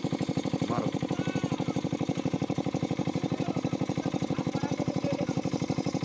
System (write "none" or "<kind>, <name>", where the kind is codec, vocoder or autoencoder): vocoder, BigVGAN v2